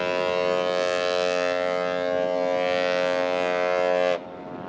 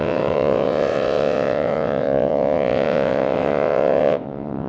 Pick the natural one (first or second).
first